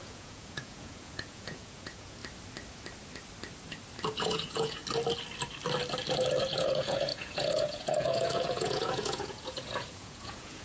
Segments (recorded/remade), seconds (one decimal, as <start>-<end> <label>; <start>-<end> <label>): 0.0-2.2 remade; 2.2-4.2 recorded; 4.2-4.8 remade; 4.8-6.4 recorded; 6.4-10.6 remade